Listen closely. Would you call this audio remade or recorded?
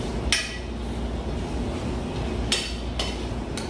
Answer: recorded